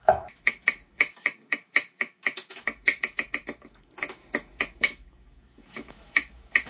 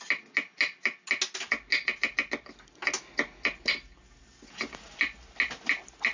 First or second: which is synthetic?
first